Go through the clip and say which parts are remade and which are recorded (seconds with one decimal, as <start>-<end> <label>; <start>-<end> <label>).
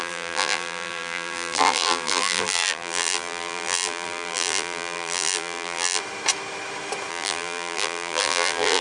0.0-6.0 remade; 6.0-7.1 recorded; 7.1-8.8 remade